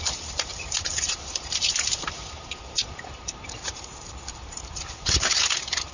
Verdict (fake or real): fake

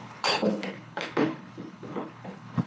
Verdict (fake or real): fake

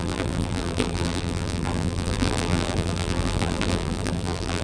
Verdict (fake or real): fake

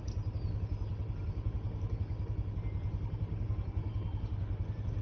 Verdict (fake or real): real